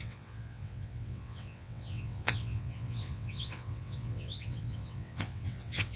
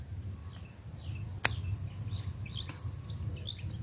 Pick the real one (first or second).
second